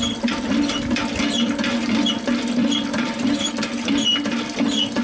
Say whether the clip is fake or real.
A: real